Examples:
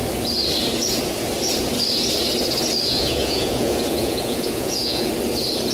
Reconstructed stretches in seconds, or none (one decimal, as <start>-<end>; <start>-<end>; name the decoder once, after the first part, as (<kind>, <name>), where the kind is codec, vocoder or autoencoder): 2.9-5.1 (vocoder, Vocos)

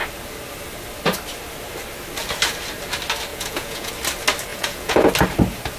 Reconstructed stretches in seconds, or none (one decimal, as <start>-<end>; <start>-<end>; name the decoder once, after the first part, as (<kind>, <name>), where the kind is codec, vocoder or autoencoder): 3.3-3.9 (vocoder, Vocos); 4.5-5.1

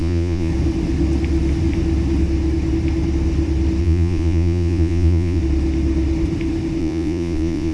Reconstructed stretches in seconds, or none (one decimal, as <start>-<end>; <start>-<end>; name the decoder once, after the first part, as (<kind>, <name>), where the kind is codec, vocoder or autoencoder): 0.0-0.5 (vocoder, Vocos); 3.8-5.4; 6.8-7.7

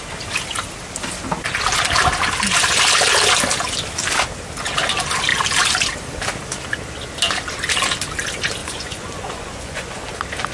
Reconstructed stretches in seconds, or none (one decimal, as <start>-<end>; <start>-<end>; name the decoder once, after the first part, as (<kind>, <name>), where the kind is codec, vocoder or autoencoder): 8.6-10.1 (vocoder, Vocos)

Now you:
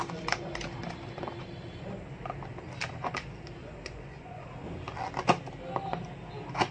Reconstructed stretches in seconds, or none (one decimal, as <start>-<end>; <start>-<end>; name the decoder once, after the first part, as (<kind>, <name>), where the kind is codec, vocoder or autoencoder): 3.6-4.5 (vocoder, Vocos)

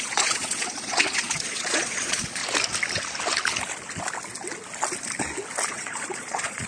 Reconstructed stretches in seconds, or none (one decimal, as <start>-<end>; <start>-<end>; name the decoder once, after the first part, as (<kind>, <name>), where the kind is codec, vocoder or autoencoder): 0.0-2.4 (vocoder, Vocos); 5.7-6.7